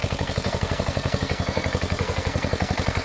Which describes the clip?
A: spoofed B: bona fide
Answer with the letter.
A